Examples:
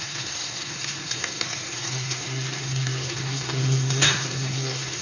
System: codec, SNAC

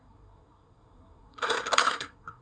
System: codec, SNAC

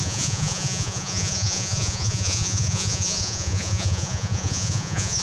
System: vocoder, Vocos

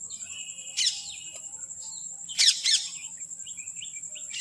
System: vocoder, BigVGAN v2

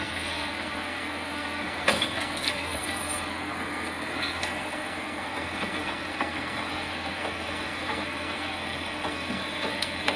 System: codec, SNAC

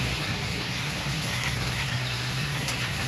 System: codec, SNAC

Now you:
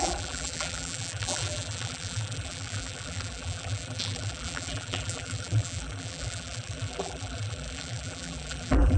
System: vocoder, BigVGAN v2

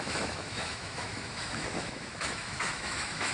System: autoencoder, DAC-VAE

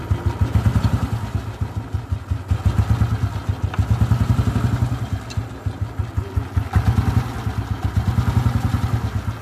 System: none